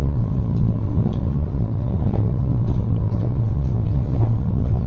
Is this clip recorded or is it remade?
remade